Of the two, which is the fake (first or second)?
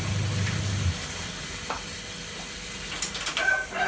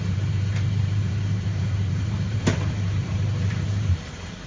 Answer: second